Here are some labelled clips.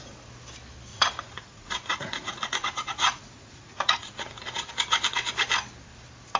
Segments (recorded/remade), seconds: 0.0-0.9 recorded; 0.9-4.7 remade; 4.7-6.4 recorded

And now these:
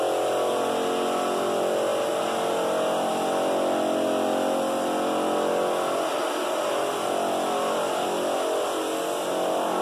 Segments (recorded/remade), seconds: 0.0-9.8 recorded

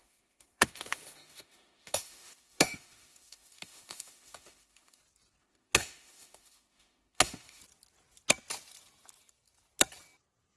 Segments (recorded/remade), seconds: 0.0-5.0 remade; 5.0-5.4 recorded; 5.4-7.6 remade; 7.6-10.6 recorded

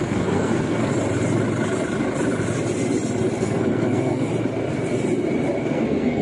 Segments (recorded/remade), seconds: 0.0-0.9 remade; 0.9-3.4 recorded; 3.4-4.3 remade; 4.3-5.6 recorded; 5.6-6.2 remade

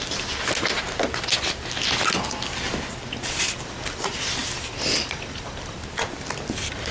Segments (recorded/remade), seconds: 0.0-6.9 recorded

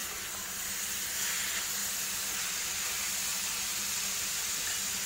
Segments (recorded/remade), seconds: 0.0-3.3 recorded; 3.3-4.6 remade; 4.6-5.1 recorded